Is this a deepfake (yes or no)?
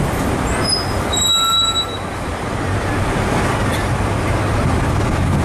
no